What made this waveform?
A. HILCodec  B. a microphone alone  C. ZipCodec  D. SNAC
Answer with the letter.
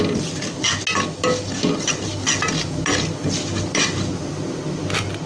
B